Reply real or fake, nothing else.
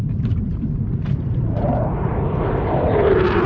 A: fake